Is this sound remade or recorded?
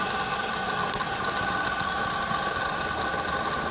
recorded